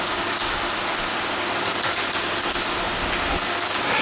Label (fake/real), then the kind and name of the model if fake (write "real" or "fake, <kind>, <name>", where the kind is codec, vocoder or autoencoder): real